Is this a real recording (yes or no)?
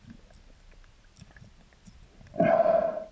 yes